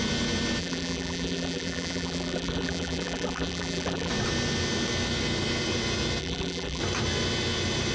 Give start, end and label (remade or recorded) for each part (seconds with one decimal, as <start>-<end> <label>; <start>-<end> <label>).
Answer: 0.0-0.6 recorded; 0.6-4.1 remade; 4.1-6.2 recorded; 6.2-6.8 remade; 6.8-7.9 recorded